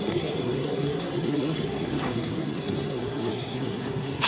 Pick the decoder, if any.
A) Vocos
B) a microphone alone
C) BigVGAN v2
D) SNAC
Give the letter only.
D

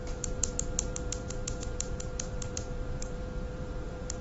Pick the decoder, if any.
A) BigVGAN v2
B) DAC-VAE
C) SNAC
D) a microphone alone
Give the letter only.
A